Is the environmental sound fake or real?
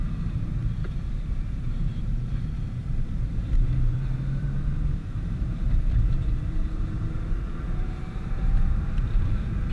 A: fake